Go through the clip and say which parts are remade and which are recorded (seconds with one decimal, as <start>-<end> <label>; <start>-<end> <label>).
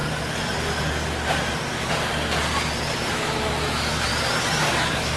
0.0-3.1 recorded; 3.1-4.1 remade; 4.1-4.6 recorded; 4.6-5.2 remade